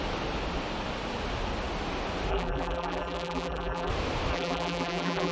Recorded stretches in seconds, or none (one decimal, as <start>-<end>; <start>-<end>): 0.0-2.3; 3.9-4.3